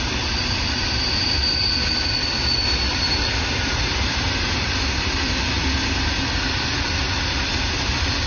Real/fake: real